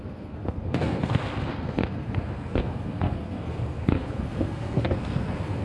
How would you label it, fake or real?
fake